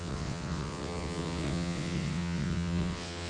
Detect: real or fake fake